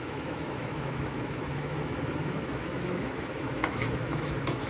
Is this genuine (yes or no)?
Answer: no